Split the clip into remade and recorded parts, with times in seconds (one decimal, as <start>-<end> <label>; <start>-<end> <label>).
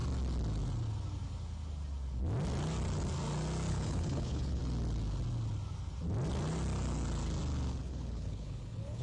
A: 0.0-3.7 recorded; 3.7-4.6 remade; 4.6-7.8 recorded; 7.8-9.0 remade